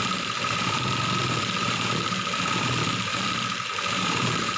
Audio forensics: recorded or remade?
recorded